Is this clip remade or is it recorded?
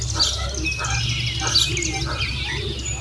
recorded